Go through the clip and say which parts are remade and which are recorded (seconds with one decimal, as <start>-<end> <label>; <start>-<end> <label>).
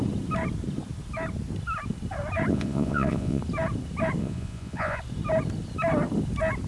0.0-2.5 recorded; 2.5-3.4 remade; 3.4-4.2 recorded; 4.2-5.0 remade; 5.0-6.7 recorded